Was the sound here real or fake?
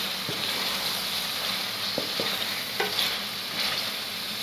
real